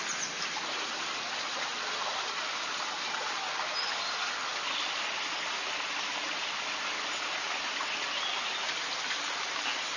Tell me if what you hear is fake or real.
real